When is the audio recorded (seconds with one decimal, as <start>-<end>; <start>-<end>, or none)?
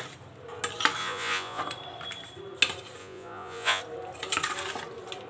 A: 0.0-1.0; 1.6-3.0; 3.8-5.3